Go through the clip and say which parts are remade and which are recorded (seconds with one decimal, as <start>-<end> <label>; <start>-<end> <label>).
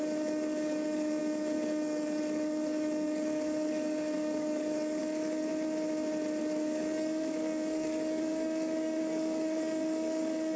0.0-5.5 remade; 5.5-6.4 recorded; 6.4-10.6 remade